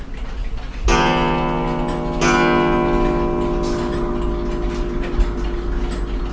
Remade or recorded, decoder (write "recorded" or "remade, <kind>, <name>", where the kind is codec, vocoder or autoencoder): recorded